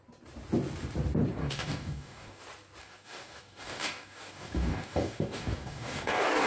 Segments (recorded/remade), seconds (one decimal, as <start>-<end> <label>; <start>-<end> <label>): 0.0-1.4 recorded; 1.4-2.4 remade; 2.4-2.8 recorded; 2.8-6.5 remade